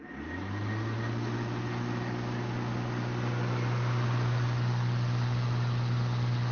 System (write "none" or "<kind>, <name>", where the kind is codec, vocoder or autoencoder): none